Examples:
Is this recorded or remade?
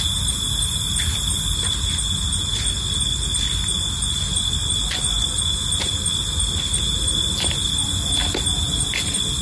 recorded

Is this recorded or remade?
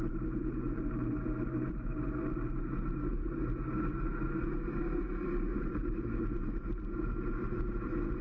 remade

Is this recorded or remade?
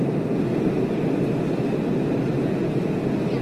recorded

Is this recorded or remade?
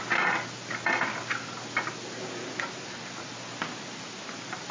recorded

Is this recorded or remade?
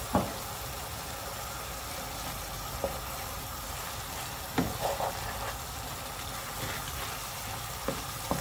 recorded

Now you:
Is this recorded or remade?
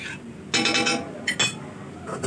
recorded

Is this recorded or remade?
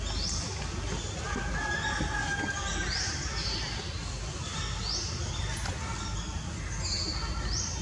recorded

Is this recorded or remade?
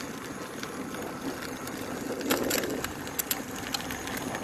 recorded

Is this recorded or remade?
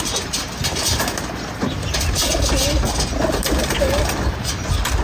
recorded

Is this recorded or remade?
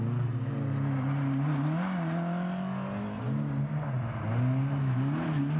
recorded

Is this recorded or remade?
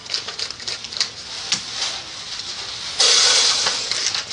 recorded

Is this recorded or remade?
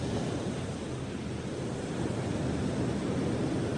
recorded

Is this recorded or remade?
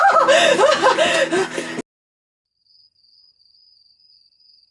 recorded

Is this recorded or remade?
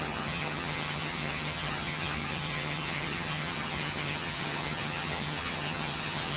remade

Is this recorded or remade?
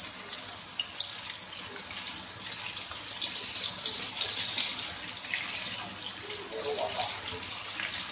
recorded